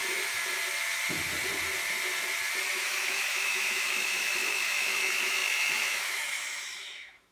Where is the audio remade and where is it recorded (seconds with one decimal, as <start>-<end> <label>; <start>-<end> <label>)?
0.0-2.7 recorded; 2.7-7.3 remade